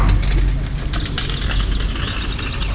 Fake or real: real